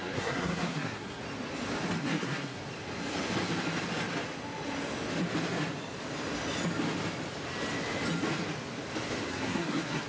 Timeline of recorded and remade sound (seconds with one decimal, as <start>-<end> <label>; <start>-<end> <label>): 0.0-1.2 remade; 1.2-2.0 recorded; 2.0-2.6 remade; 2.6-9.3 recorded; 9.3-10.1 remade